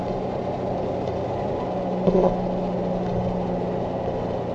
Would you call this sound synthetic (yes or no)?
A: no